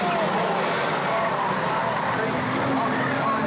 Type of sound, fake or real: real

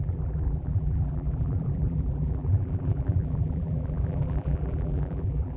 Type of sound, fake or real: fake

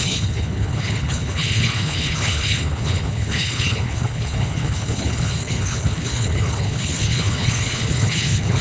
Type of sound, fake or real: fake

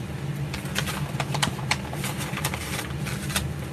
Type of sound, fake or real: real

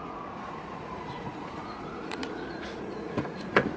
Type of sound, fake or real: fake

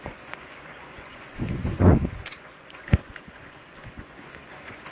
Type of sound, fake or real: fake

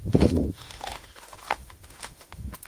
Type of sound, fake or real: fake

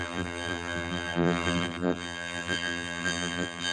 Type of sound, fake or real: fake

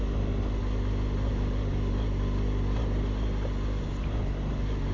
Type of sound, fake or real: real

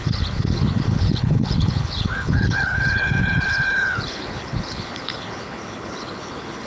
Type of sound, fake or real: fake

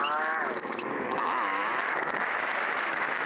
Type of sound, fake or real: fake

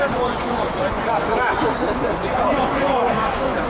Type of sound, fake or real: fake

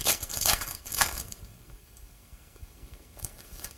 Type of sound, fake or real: fake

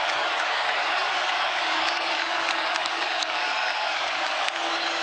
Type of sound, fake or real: fake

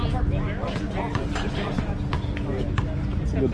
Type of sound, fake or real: real